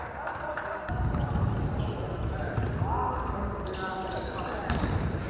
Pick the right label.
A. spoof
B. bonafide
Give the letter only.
B